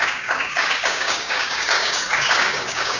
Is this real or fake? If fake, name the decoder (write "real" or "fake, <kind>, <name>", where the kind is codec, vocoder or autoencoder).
fake, codec, DAC